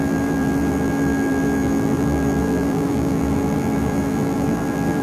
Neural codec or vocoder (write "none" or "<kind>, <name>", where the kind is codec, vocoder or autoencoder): vocoder, BigVGAN v2